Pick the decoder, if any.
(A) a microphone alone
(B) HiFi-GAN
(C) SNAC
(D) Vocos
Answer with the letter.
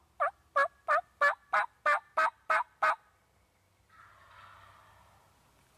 A